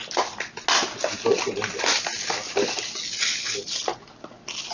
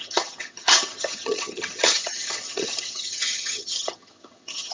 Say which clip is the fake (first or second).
second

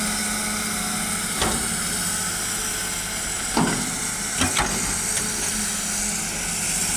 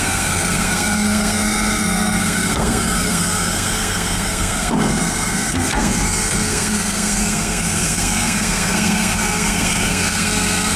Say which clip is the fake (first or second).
second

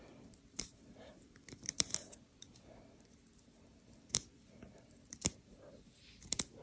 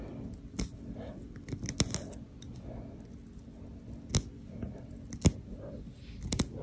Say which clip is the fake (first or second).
first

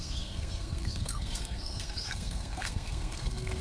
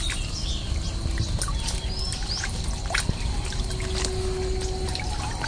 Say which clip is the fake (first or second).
first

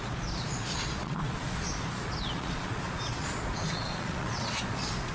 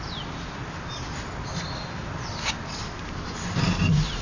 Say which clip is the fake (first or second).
first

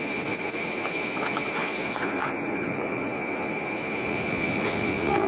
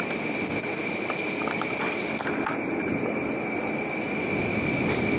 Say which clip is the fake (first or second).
first